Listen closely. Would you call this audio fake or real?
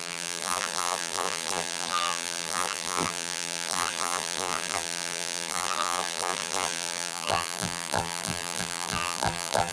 fake